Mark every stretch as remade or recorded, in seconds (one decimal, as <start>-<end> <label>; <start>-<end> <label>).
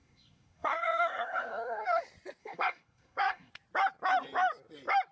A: 0.0-2.0 remade; 2.0-2.4 recorded; 2.4-3.5 remade; 3.5-5.1 recorded